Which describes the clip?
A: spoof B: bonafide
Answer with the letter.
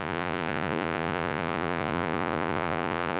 A